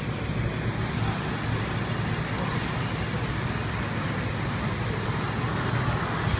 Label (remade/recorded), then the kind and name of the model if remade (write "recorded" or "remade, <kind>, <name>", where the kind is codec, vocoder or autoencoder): recorded